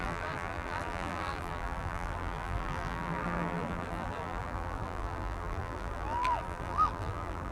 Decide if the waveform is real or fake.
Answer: fake